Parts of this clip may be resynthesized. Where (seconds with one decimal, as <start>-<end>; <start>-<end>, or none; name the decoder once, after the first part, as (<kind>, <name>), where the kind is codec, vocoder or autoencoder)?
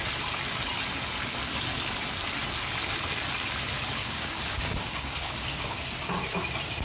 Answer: 4.0-6.1 (codec, DAC)